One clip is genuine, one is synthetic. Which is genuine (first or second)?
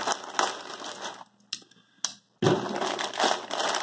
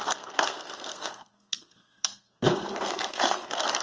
first